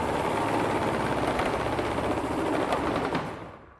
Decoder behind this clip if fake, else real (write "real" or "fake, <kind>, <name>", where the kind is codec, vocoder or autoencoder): real